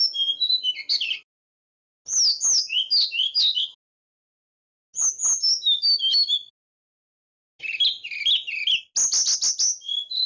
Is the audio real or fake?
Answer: real